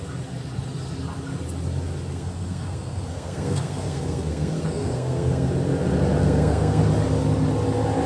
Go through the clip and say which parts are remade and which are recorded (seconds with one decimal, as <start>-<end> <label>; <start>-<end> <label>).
0.0-2.1 recorded; 2.1-5.5 remade; 5.5-6.2 recorded; 6.2-6.8 remade; 6.8-8.1 recorded